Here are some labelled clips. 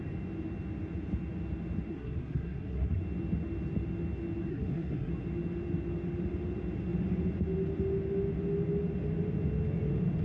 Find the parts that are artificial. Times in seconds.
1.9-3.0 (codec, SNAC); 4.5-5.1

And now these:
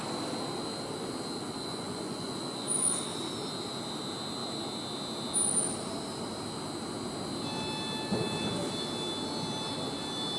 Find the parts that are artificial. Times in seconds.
1.6-2.9 (vocoder, Vocos)

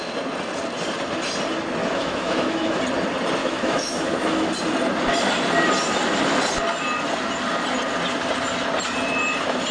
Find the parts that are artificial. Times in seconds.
1.8-2.8 (autoencoder, DAC-VAE); 3.4-4.5

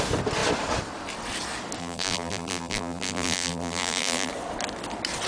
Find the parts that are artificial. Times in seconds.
1.8-4.3 (vocoder, BigVGAN v2)

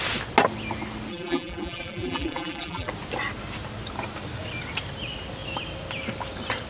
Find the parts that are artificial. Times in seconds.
1.1-2.9 (vocoder, BigVGAN v2)